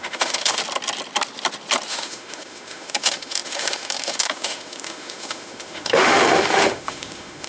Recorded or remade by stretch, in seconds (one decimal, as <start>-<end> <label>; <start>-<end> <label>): 0.0-0.6 remade; 0.6-1.9 recorded; 1.9-7.5 remade